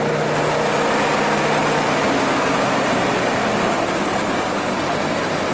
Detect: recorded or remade recorded